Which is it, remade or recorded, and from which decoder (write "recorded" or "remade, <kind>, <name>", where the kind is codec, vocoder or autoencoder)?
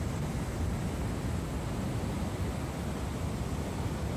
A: recorded